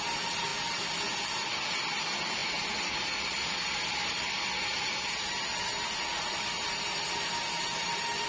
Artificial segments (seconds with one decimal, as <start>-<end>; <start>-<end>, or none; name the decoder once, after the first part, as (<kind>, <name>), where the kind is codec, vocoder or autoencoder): none